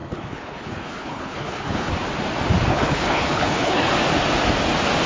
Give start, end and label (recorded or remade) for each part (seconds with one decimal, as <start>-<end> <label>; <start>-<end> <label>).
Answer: 0.0-1.9 remade; 1.9-2.7 recorded; 2.7-3.9 remade; 3.9-5.1 recorded